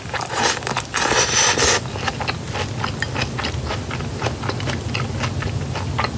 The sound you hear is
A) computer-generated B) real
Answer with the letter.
B